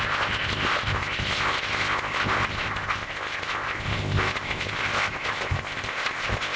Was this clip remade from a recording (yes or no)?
yes